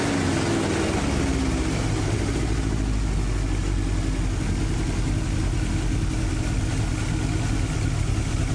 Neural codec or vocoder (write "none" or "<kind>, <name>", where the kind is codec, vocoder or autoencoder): none